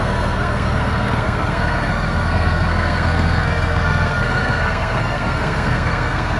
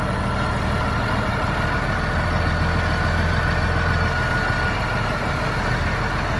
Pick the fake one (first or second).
first